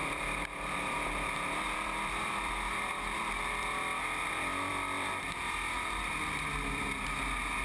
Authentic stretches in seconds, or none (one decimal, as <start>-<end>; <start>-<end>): 4.3-4.7; 6.8-7.6